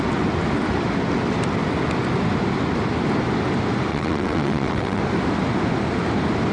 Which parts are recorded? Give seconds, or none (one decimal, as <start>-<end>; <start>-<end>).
0.0-3.9; 5.0-6.5